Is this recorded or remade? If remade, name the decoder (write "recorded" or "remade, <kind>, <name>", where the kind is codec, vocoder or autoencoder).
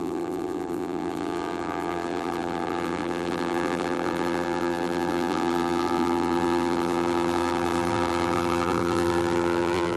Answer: remade, vocoder, BigVGAN v2